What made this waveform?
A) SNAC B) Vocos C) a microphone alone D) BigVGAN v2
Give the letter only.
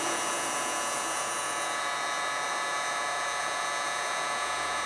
B